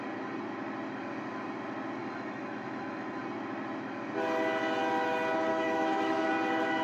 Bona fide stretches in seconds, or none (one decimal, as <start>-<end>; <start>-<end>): 0.0-2.0; 3.2-5.5; 6.3-6.8

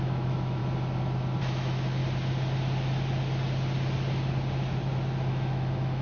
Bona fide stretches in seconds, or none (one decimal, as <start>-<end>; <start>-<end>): 0.6-1.4; 2.0-5.3

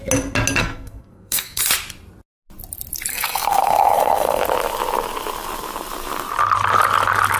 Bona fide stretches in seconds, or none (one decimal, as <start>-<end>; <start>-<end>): 0.0-0.6; 1.6-3.1; 4.4-7.4

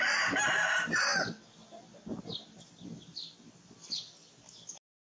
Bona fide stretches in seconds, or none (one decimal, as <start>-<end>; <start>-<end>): 0.0-5.1

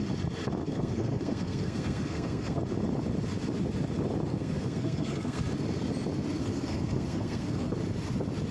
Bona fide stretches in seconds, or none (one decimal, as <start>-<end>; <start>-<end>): 0.0-0.6; 2.6-4.3; 5.4-6.4; 7.7-8.5